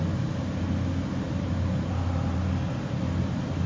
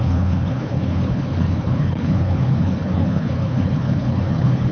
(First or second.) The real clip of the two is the first